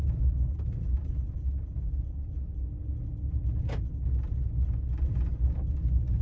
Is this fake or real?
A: real